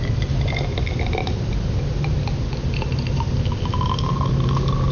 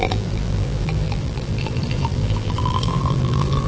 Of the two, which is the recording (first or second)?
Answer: first